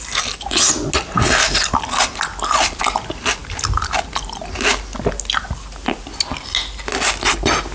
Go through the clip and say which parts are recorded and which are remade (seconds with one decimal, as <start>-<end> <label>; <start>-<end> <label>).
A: 0.0-7.7 recorded